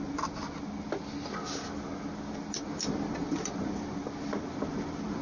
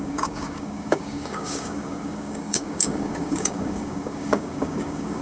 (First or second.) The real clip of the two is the first